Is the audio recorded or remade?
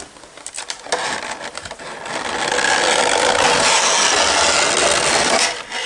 recorded